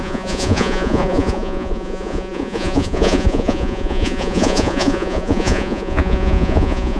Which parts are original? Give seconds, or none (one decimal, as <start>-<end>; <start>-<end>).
none